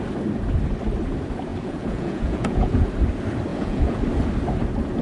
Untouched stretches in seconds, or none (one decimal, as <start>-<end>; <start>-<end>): 0.0-1.5; 2.9-3.5; 4.0-5.0